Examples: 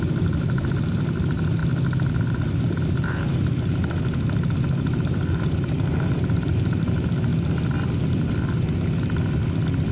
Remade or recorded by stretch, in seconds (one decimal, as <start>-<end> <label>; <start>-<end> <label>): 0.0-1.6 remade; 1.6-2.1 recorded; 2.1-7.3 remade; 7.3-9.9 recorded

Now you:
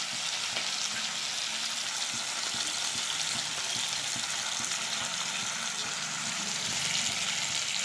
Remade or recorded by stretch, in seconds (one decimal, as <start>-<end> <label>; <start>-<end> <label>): 0.0-5.8 recorded; 5.8-6.8 remade; 6.8-7.8 recorded

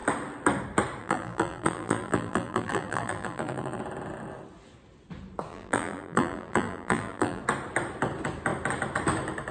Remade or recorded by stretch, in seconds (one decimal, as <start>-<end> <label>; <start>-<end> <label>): 0.0-1.0 recorded; 1.0-3.8 remade; 3.8-5.5 recorded; 5.5-7.4 remade; 7.4-9.5 recorded